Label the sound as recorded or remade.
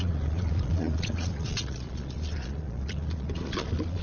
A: remade